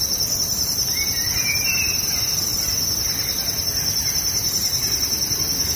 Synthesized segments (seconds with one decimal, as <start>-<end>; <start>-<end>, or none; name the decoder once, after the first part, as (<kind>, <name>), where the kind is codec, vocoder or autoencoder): none